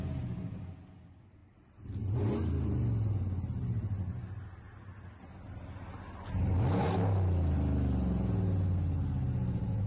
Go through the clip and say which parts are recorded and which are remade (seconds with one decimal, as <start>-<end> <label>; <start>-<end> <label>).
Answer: 0.0-9.9 recorded